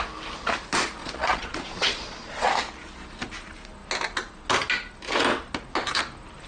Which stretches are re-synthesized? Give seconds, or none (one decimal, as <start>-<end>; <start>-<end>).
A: 1.0-2.5